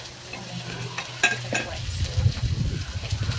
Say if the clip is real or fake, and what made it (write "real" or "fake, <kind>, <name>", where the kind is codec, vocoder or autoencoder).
real